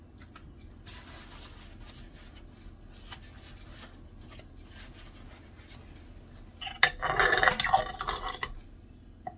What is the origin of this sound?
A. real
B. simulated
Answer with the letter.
A